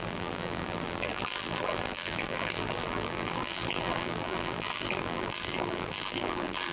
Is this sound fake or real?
fake